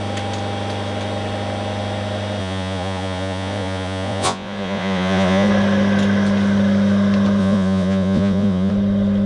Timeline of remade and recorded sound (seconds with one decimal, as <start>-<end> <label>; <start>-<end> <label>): 0.0-2.4 recorded; 2.4-5.5 remade; 5.5-7.4 recorded; 7.4-8.7 remade; 8.7-9.3 recorded